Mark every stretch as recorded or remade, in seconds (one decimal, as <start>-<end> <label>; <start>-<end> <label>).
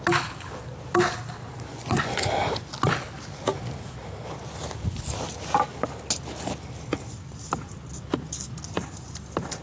0.0-1.7 recorded; 1.7-2.3 remade; 2.3-9.6 recorded